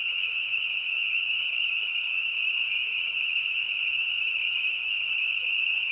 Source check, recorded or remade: remade